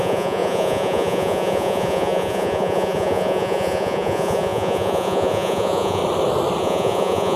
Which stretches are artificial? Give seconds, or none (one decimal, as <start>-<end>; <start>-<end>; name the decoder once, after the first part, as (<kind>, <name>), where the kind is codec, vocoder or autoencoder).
0.0-6.0 (vocoder, Vocos); 6.6-7.4